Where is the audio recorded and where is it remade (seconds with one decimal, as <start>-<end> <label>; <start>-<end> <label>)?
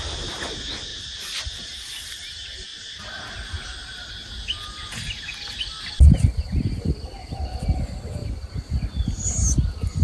0.0-2.7 recorded; 2.7-4.1 remade; 4.1-8.2 recorded; 8.2-9.3 remade; 9.3-10.0 recorded